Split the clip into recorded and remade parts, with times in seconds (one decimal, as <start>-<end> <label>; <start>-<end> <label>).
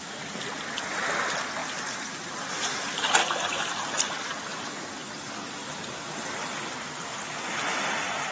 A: 0.0-1.6 recorded; 1.6-2.7 remade; 2.7-5.6 recorded; 5.6-6.6 remade; 6.6-8.3 recorded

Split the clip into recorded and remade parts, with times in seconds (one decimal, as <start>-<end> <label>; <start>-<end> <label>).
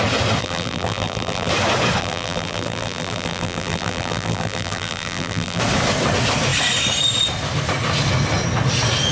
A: 0.0-0.4 recorded; 0.4-1.5 remade; 1.5-2.0 recorded; 2.0-5.6 remade; 5.6-9.1 recorded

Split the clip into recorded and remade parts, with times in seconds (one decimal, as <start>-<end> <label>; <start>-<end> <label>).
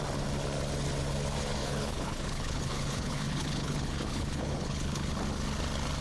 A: 0.0-1.6 recorded; 1.6-5.1 remade; 5.1-6.0 recorded